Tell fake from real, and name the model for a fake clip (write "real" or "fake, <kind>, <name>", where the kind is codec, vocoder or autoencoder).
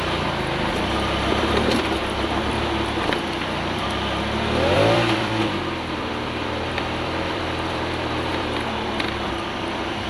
fake, vocoder, BigVGAN v2